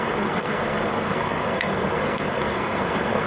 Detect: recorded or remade remade